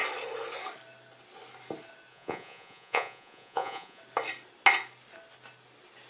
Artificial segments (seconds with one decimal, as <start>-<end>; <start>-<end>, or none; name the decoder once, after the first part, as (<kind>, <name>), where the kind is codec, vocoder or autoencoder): 2.1-4.0 (vocoder, Vocos)